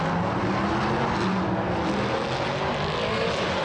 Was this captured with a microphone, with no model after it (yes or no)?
yes